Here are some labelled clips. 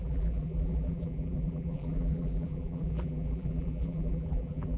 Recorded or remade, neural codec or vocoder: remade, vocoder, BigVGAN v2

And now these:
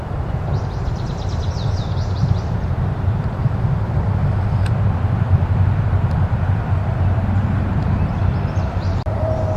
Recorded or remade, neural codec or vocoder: remade, vocoder, BigVGAN v2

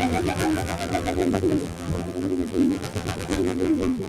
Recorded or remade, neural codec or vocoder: remade, vocoder, BigVGAN v2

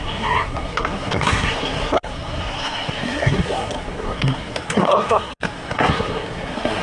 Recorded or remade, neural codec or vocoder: remade, codec, SNAC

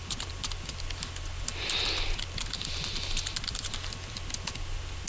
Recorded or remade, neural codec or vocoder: recorded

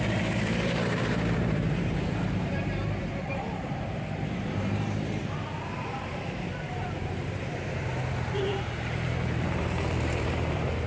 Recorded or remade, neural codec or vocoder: remade, vocoder, BigVGAN v2